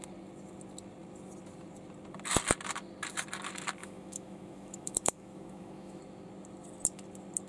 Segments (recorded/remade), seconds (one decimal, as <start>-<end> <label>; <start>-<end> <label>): 0.0-3.8 recorded; 3.8-6.0 remade; 6.0-7.5 recorded